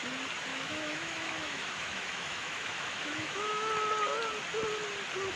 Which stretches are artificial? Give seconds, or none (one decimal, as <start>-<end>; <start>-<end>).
0.5-3.7